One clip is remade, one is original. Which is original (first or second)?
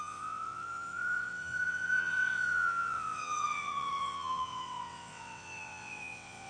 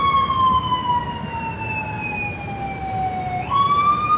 second